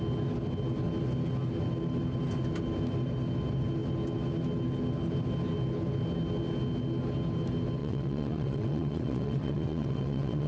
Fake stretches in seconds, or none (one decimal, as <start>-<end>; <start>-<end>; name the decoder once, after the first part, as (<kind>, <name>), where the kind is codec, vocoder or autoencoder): 7.8-10.5 (vocoder, WaveNeXt)